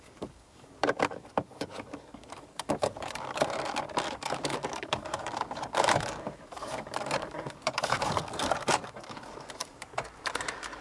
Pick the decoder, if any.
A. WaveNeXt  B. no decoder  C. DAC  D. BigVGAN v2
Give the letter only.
C